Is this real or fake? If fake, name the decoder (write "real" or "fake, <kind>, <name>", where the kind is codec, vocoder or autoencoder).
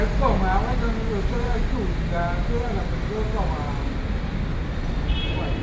real